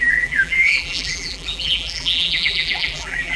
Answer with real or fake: fake